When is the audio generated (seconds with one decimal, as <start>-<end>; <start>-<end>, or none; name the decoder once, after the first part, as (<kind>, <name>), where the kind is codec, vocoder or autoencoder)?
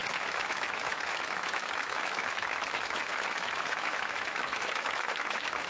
0.0-5.7 (autoencoder, DAC-VAE)